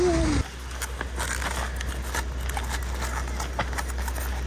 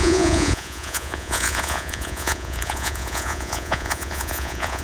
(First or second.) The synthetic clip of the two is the second